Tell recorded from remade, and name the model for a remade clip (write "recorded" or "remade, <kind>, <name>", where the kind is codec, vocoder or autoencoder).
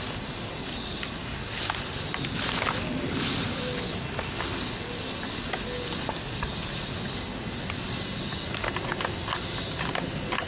recorded